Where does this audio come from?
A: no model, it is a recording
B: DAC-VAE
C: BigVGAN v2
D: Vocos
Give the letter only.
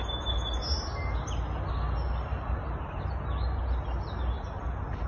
A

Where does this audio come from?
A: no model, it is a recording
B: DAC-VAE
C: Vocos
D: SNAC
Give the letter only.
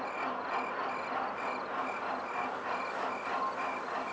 A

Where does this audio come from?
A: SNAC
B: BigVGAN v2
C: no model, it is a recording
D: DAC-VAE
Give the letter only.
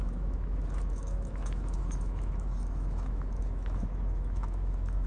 D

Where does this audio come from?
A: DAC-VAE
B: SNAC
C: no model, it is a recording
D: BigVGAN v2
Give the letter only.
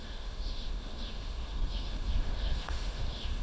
A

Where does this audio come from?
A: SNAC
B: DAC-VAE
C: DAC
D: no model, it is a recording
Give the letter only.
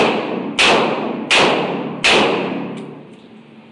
D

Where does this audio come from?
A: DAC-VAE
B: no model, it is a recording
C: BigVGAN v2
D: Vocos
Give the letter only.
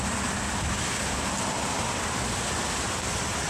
B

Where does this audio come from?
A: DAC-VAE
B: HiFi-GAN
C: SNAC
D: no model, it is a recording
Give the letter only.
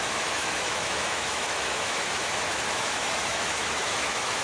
A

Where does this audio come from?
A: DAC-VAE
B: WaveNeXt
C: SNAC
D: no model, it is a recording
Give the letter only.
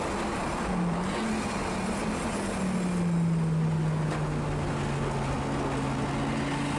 D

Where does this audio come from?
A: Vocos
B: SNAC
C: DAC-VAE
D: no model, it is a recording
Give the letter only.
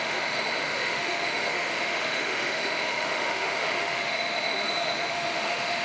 C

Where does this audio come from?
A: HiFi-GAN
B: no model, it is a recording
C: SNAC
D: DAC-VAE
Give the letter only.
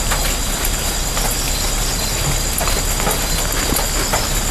B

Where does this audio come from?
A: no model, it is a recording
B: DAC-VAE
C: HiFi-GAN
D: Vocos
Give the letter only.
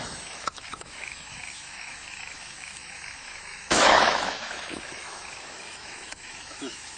B